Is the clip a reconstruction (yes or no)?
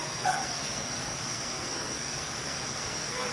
yes